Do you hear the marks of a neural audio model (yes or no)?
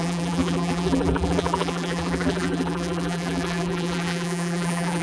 yes